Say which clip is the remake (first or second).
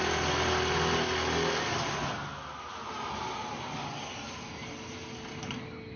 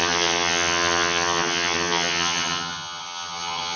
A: second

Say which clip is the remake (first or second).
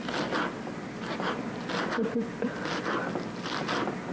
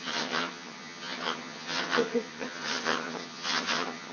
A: second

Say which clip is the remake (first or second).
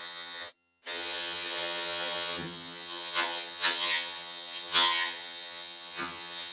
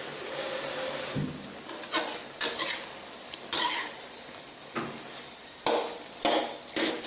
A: first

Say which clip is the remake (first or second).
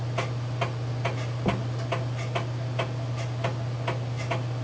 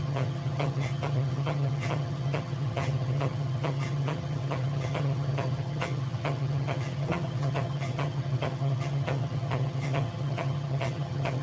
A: second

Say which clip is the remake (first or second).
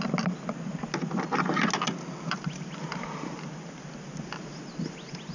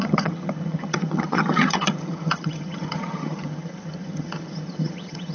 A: second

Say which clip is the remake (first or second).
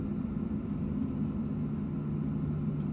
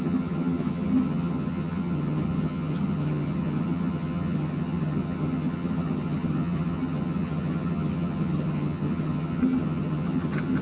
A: second